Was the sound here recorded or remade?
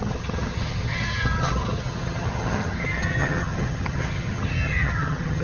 remade